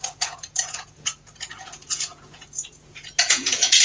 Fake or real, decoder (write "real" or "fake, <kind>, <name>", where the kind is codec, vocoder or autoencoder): fake, vocoder, Vocos